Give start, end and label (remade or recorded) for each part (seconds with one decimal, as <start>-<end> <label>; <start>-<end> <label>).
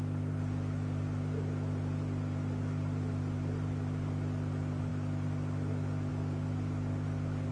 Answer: 0.0-7.5 recorded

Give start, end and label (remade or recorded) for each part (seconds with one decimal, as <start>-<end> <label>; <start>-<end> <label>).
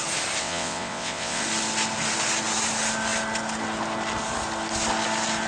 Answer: 0.0-0.4 recorded; 0.4-1.4 remade; 1.4-5.5 recorded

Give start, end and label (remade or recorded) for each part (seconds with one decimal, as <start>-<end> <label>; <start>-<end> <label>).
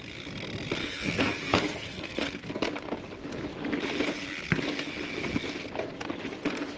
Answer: 0.0-0.8 recorded; 0.8-2.5 remade; 2.5-6.8 recorded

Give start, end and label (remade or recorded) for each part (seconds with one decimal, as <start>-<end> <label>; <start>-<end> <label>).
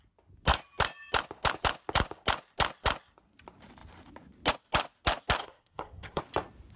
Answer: 0.0-5.4 recorded; 5.4-6.2 remade; 6.2-6.8 recorded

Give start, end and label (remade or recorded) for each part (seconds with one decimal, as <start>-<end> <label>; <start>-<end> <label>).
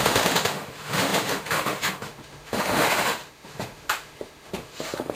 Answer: 0.0-5.1 remade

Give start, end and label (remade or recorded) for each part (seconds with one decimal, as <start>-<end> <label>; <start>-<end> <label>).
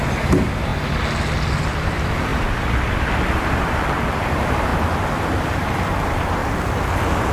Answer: 0.0-0.7 remade; 0.7-1.9 recorded; 1.9-4.7 remade; 4.7-5.9 recorded; 5.9-6.4 remade; 6.4-7.3 recorded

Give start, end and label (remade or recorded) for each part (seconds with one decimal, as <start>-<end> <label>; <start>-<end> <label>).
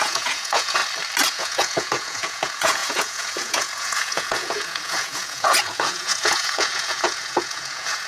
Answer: 0.0-0.8 remade; 0.8-1.3 recorded; 1.3-8.1 remade